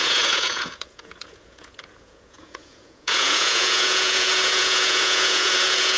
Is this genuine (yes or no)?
no